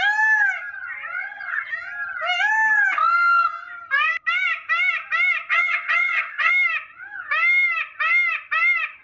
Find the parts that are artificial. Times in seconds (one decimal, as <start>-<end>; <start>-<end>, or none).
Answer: 1.2-1.7; 5.5-6.5